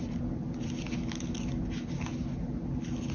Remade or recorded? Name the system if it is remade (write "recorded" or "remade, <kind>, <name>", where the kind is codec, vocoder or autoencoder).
recorded